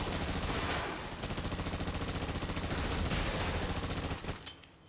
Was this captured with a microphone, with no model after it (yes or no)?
yes